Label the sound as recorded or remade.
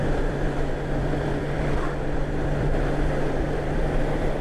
remade